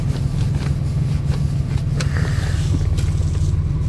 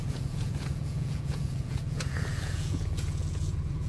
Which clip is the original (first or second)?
first